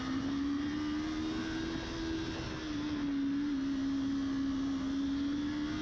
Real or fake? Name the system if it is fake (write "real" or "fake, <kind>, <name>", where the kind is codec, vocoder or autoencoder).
real